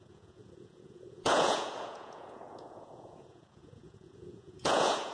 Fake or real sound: fake